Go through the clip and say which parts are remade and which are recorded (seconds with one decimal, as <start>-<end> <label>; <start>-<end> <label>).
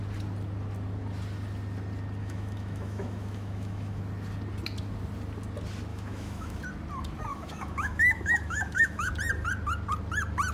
0.0-2.2 recorded; 2.2-4.0 remade; 4.0-5.9 recorded; 5.9-6.6 remade; 6.6-7.3 recorded; 7.3-9.1 remade; 9.1-10.5 recorded